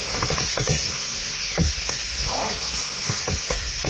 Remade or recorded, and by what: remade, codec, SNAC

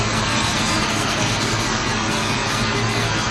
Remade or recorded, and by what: remade, codec, SNAC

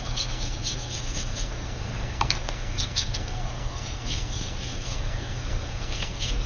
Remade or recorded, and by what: remade, codec, SNAC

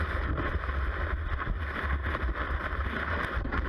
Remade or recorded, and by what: recorded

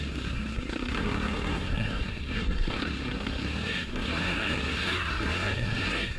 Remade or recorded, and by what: remade, codec, SNAC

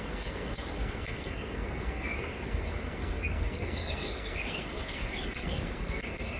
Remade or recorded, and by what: remade, codec, SNAC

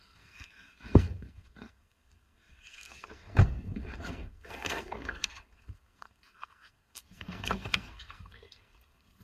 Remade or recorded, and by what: remade, codec, SNAC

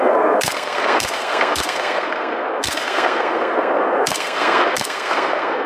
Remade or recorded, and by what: remade, codec, SNAC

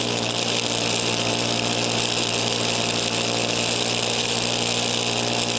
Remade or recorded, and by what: recorded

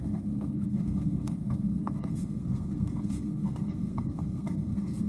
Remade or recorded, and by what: remade, codec, SNAC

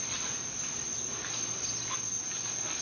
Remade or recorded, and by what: recorded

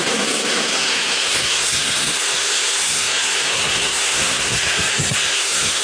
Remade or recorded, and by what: remade, codec, SNAC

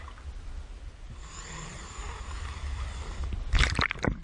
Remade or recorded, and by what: recorded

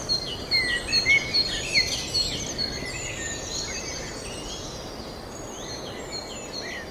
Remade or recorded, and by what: recorded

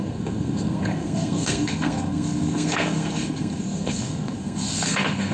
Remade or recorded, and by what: remade, codec, SNAC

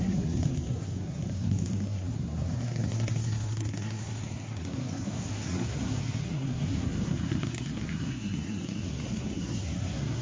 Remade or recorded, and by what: remade, codec, SNAC